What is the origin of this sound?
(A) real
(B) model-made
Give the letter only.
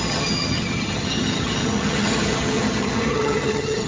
B